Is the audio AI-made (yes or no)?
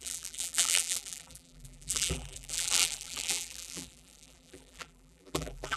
yes